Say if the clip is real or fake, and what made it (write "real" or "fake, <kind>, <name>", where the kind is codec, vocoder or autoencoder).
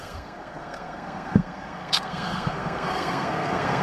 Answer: fake, codec, SNAC